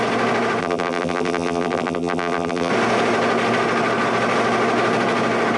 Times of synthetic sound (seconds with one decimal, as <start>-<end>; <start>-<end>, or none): 0.6-2.7